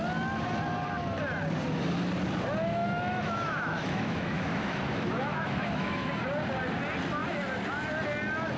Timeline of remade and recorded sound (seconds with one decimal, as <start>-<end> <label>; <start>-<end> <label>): 0.0-2.7 recorded; 2.7-6.1 remade; 6.1-8.6 recorded